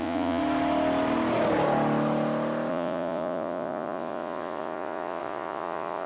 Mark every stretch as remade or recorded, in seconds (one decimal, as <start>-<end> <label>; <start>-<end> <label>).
0.0-0.4 remade; 0.4-2.7 recorded; 2.7-6.1 remade